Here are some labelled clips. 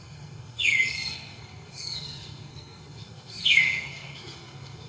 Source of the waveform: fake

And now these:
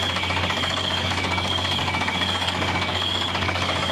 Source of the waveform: fake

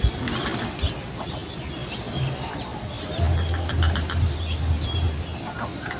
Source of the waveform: real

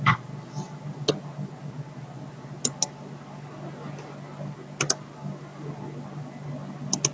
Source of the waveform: real